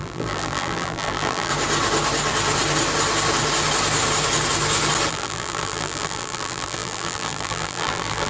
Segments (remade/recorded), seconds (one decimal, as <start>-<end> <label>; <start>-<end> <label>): 0.0-1.5 remade; 1.5-5.1 recorded; 5.1-8.3 remade